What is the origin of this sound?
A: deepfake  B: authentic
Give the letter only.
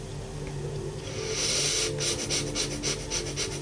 B